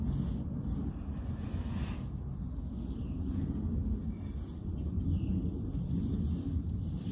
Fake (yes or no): no